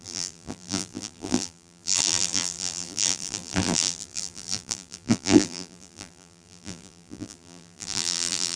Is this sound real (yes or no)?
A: no